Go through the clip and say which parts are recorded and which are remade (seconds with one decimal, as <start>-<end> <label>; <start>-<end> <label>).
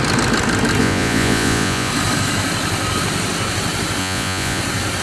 0.0-0.8 recorded; 0.8-1.9 remade; 1.9-4.0 recorded; 4.0-4.6 remade; 4.6-5.0 recorded